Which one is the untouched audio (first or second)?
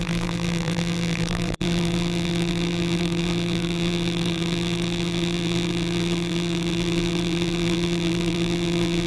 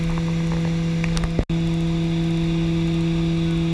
second